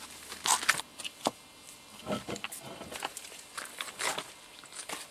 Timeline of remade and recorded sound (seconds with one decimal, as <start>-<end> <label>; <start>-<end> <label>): 0.0-5.1 recorded